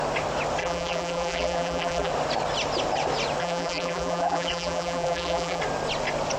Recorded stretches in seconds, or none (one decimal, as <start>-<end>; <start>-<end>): 0.0-0.6; 2.1-3.4; 5.6-6.4

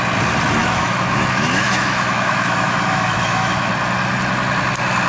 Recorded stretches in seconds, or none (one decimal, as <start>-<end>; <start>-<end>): 0.0-0.6; 3.7-5.1

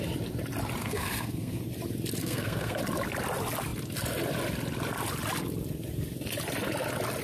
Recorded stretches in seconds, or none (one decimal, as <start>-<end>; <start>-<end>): 0.0-0.8; 1.6-2.2; 2.8-7.2

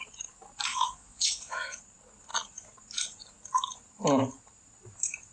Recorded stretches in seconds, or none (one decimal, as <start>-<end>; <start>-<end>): 0.0-0.7; 1.8-5.3

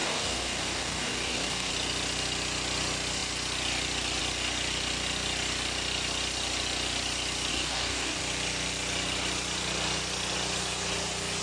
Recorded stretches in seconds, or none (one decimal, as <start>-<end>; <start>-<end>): 1.7-7.5; 8.2-11.4

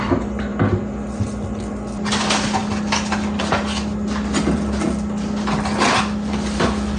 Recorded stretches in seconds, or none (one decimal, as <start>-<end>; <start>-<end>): 0.0-7.0